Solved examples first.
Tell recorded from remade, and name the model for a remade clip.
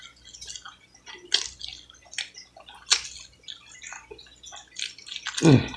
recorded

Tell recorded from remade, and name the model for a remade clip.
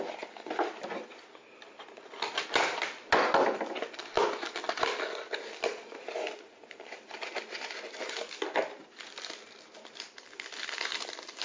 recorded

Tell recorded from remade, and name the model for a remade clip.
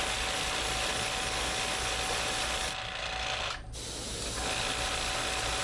recorded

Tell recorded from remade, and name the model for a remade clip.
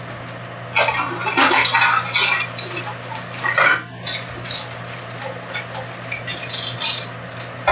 recorded